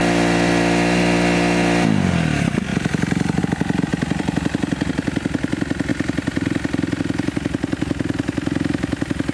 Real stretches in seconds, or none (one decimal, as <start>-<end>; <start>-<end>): 0.0-2.7; 3.4-3.9; 4.9-5.9; 7.0-9.3